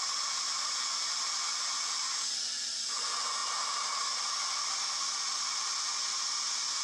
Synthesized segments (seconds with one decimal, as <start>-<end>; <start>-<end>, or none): 3.4-4.3

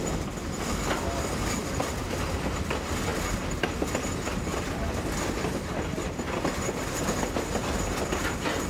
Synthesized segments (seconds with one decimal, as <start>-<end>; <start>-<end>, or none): none